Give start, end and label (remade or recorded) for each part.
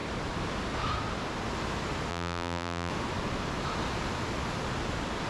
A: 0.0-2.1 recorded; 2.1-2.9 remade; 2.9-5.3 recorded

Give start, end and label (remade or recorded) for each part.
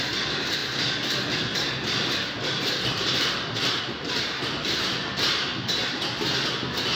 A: 0.0-6.9 recorded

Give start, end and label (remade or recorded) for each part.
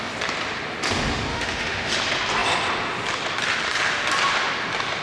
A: 0.0-1.3 recorded; 1.3-1.9 remade; 1.9-5.0 recorded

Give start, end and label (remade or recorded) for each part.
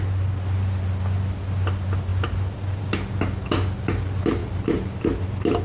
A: 0.0-5.6 recorded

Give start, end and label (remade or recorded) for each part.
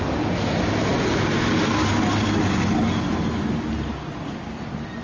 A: 0.0-5.0 recorded